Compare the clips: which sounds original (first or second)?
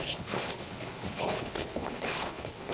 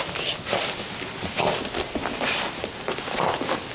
second